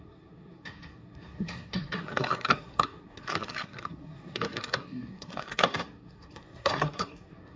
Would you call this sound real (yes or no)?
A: no